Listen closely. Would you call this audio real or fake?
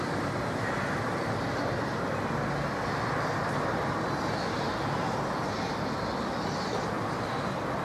real